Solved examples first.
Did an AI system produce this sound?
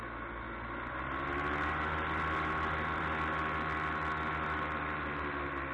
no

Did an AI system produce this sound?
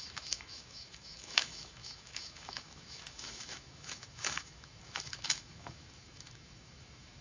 yes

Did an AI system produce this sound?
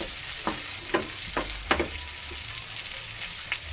no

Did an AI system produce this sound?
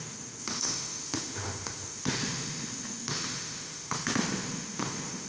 yes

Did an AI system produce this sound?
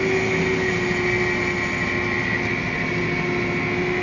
no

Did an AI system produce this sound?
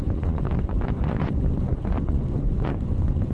yes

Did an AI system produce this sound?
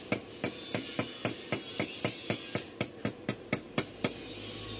yes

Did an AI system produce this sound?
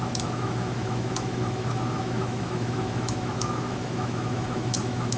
yes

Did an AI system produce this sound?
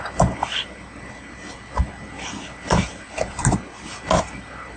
no